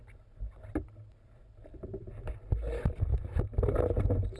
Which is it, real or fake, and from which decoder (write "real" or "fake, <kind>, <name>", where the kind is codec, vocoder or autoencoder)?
real